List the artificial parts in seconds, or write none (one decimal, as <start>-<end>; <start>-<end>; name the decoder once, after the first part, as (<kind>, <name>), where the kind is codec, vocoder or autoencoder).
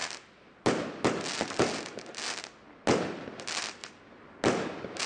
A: none